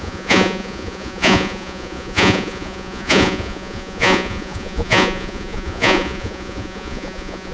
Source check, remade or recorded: remade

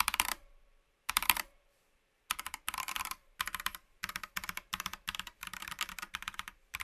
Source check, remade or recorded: remade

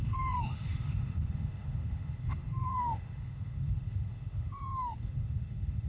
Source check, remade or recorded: remade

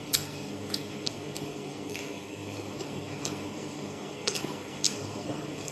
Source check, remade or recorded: remade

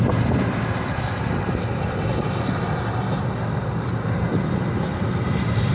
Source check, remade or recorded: remade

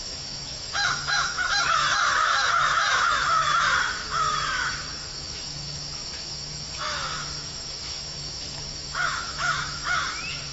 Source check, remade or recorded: remade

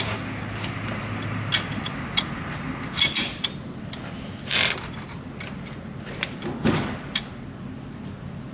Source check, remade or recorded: recorded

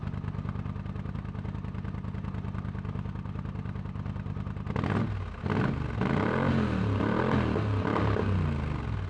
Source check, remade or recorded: recorded